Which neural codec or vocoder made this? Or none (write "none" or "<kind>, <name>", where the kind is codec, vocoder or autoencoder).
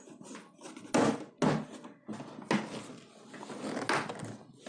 none